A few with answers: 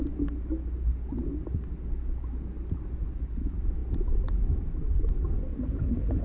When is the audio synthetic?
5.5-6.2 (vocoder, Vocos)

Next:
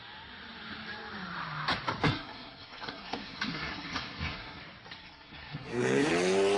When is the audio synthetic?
2.0-4.6 (codec, SNAC); 5.0-6.1

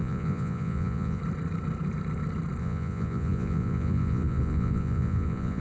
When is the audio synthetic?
0.0-1.2 (vocoder, Vocos); 2.6-5.6

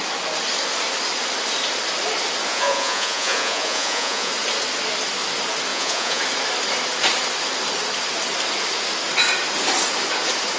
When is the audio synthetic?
2.5-4.3 (vocoder, Vocos); 5.7-6.2

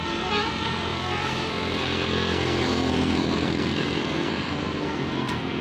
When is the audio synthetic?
0.0-5.6 (codec, SNAC)

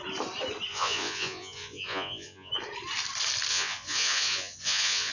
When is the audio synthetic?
0.7-2.5 (vocoder, Vocos); 3.5-5.1

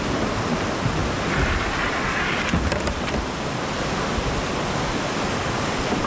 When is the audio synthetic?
none

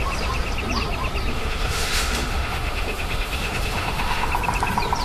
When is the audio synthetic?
1.3-4.3 (autoencoder, DAC-VAE)